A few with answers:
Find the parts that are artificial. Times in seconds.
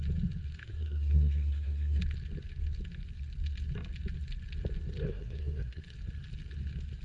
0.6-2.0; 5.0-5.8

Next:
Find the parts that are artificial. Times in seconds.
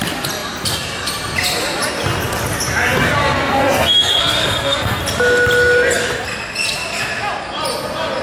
3.2-5.0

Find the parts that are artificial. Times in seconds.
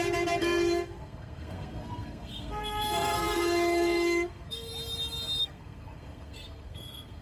0.4-4.7; 5.4-7.2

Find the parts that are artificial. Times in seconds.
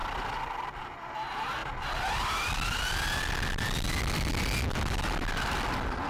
none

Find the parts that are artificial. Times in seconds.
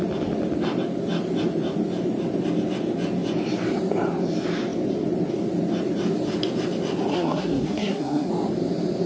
7.1-8.3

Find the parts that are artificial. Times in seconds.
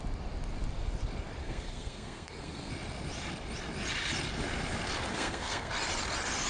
1.4-2.7; 5.1-5.7